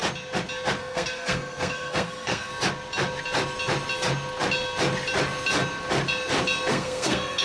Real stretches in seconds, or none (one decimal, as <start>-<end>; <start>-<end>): 0.0-0.8; 2.5-6.7